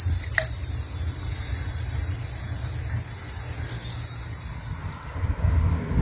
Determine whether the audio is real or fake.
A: real